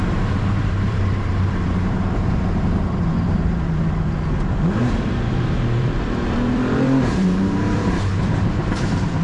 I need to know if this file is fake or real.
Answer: fake